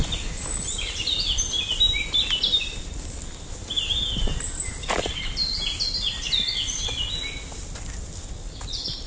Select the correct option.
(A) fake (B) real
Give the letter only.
B